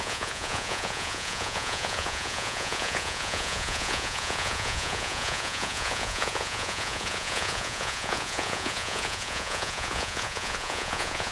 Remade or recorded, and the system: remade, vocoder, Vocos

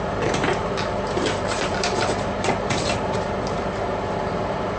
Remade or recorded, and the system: remade, vocoder, BigVGAN v2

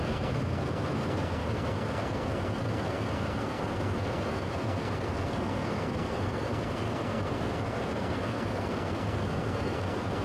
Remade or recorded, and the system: remade, codec, SNAC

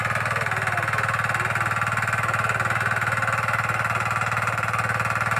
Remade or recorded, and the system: recorded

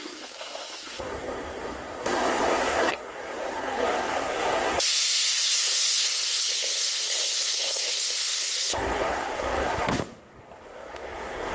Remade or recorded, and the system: remade, codec, SNAC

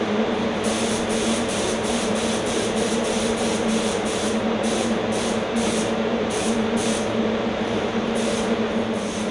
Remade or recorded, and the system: remade, vocoder, BigVGAN v2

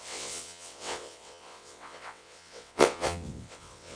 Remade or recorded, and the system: remade, vocoder, WaveNeXt